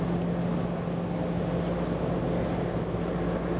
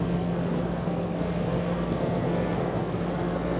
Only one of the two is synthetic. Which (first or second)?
second